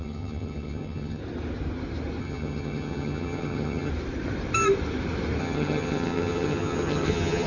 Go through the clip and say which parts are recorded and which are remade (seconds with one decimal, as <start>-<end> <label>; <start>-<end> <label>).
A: 0.0-1.2 remade; 1.2-2.2 recorded; 2.2-3.9 remade; 3.9-5.4 recorded; 5.4-7.5 remade